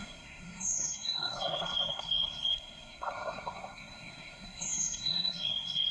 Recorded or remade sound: remade